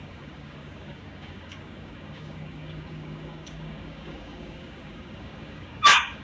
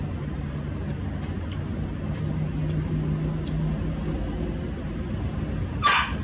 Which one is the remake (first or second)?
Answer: first